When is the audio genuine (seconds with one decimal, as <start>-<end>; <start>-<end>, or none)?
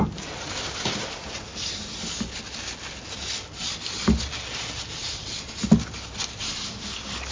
0.0-7.3